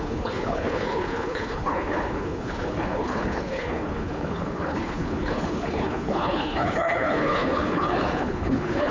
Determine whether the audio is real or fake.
fake